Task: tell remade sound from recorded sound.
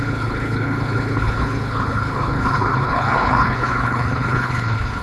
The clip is remade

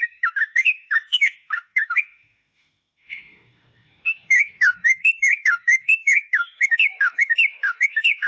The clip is remade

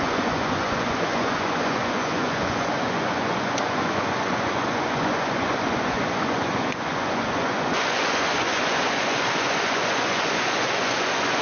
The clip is remade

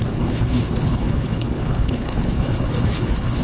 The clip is remade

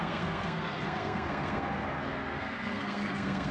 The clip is remade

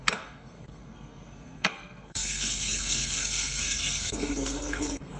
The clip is remade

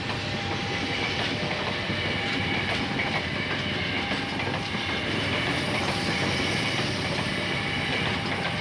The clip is recorded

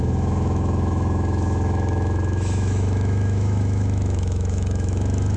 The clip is remade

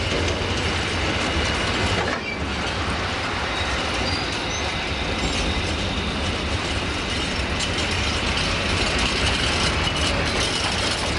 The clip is recorded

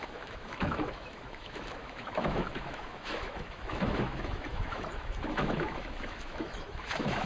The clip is remade